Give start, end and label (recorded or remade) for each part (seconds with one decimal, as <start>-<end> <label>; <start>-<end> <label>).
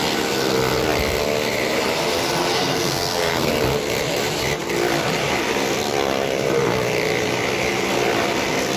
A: 0.0-2.6 recorded; 2.6-3.5 remade; 3.5-8.8 recorded